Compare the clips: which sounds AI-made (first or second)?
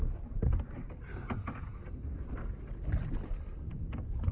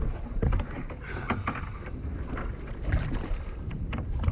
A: second